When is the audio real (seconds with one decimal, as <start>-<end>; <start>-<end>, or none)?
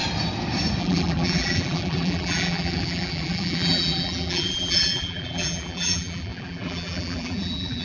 0.0-0.8